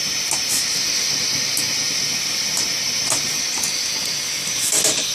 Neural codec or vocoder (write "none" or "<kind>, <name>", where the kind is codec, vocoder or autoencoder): none